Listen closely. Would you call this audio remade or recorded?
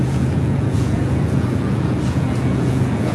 remade